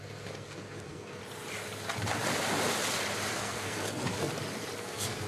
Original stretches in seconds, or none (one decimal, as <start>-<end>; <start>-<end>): 1.2-3.3; 4.3-4.8